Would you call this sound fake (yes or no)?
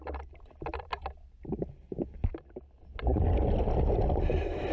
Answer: no